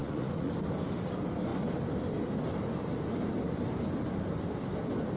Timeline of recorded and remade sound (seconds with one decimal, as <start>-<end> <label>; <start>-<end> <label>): 0.0-0.5 remade; 0.5-5.2 recorded